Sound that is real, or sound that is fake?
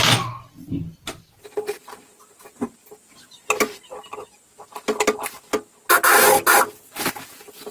real